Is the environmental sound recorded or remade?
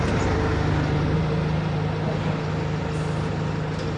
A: recorded